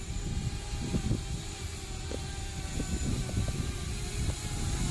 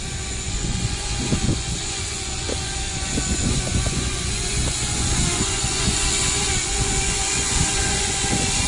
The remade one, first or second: second